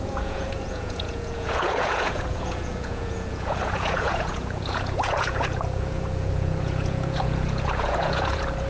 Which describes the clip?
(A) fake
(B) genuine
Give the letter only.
A